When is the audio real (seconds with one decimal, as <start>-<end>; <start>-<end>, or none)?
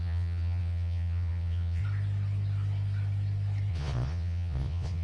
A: 1.8-3.7